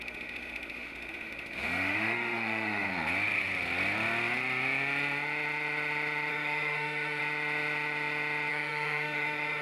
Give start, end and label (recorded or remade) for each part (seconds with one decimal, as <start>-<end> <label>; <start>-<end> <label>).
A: 0.0-2.9 remade; 2.9-6.3 recorded; 6.3-7.2 remade; 7.2-8.5 recorded; 8.5-9.6 remade